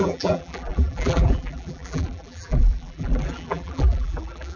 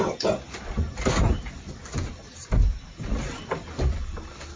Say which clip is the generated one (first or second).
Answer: first